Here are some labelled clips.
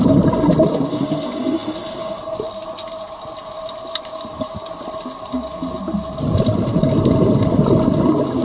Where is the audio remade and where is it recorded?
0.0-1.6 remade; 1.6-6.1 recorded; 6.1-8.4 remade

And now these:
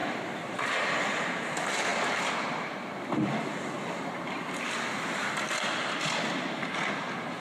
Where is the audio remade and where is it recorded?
0.0-0.7 remade; 0.7-7.4 recorded